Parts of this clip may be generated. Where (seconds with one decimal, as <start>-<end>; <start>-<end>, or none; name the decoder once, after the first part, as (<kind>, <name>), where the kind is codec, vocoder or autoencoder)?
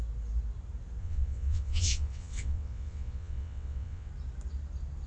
1.0-4.1 (vocoder, WaveNeXt)